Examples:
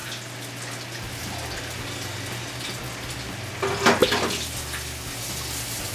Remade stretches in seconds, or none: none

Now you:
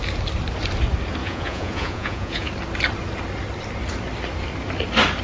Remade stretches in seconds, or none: 1.2-2.5